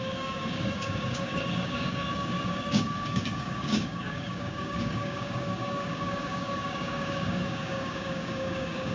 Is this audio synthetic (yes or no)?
yes